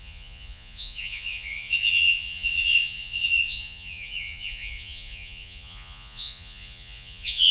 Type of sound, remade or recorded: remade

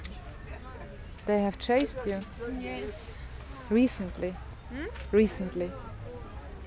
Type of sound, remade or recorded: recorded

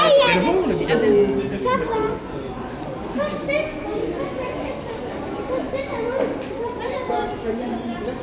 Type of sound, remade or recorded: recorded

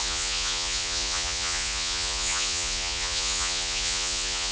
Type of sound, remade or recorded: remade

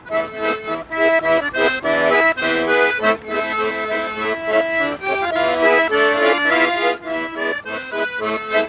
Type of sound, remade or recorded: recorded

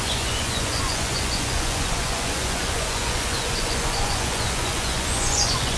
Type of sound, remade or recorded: remade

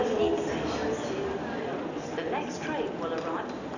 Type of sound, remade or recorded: recorded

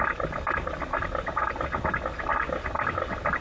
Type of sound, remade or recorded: recorded